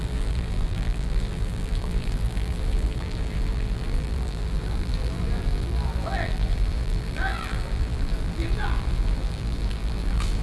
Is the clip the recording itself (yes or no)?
no